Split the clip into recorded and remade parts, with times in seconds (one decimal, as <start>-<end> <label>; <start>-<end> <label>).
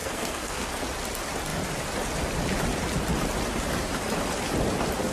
0.0-0.8 remade; 0.8-5.1 recorded